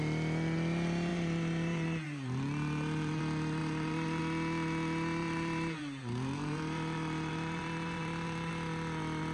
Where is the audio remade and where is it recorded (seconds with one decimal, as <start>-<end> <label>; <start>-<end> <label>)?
0.0-1.1 recorded; 1.1-3.2 remade; 3.2-3.6 recorded; 3.6-4.2 remade; 4.2-5.2 recorded; 5.2-8.5 remade; 8.5-9.3 recorded